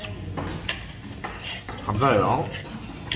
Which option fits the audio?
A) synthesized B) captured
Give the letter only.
B